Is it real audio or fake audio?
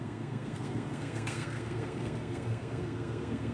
fake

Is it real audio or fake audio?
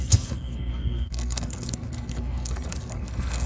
fake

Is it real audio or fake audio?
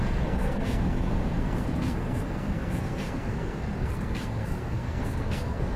fake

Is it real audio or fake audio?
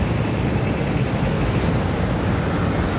real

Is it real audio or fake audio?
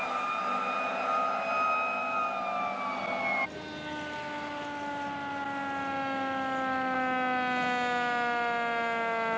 real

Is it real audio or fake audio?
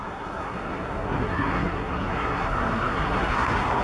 fake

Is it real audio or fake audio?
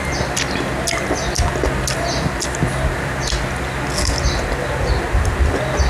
real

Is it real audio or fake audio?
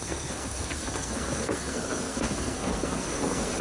fake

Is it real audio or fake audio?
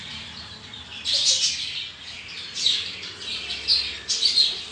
real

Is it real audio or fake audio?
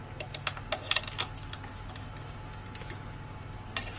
real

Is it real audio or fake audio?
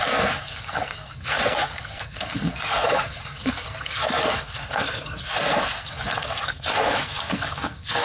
fake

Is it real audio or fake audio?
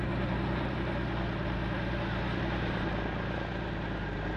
real